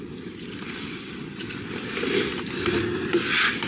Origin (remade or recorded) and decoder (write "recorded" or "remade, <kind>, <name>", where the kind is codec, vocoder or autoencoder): recorded